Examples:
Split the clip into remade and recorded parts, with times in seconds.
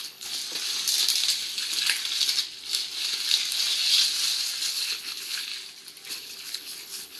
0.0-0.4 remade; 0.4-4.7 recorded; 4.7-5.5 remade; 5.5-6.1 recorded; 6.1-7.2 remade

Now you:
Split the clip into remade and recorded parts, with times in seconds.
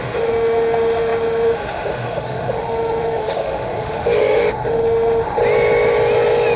0.0-5.4 remade; 5.4-6.6 recorded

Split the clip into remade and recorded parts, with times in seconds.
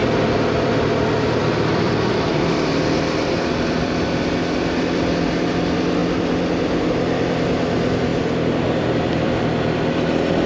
0.0-4.3 remade; 4.3-8.1 recorded; 8.1-10.5 remade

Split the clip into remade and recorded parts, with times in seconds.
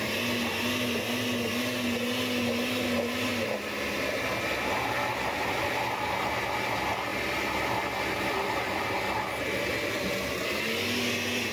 0.0-11.5 recorded